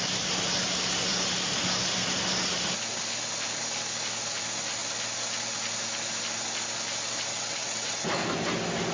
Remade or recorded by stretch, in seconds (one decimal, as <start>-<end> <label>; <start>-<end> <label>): 0.0-7.3 recorded; 7.3-8.0 remade; 8.0-8.9 recorded